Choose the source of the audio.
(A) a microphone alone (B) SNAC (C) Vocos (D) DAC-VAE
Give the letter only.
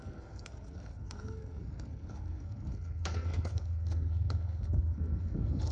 B